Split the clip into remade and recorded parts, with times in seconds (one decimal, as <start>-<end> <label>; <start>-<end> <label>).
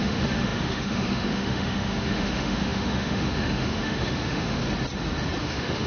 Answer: 0.0-4.6 remade; 4.6-5.4 recorded; 5.4-5.9 remade